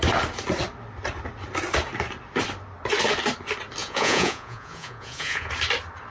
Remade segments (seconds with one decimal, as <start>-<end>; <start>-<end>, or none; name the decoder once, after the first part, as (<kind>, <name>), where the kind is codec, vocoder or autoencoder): 3.8-5.5 (vocoder, Vocos)